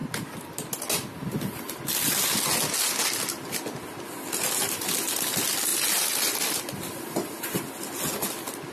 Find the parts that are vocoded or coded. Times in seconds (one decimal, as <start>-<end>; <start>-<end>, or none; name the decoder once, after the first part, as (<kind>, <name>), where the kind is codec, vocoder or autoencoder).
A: none